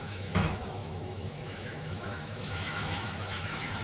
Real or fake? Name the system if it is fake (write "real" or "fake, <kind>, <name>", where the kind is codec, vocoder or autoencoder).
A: fake, autoencoder, DAC-VAE